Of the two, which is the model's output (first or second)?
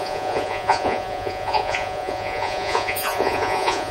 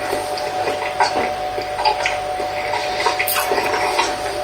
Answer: first